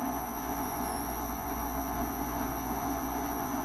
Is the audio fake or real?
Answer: fake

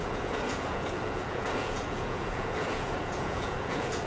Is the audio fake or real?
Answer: fake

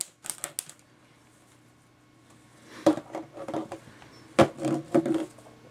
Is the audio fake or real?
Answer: real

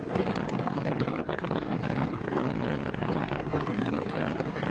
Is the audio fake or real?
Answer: fake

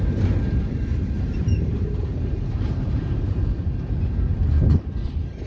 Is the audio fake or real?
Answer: fake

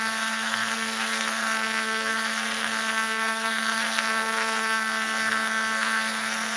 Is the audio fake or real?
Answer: fake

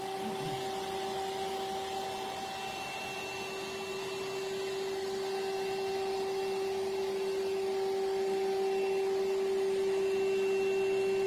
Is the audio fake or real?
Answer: real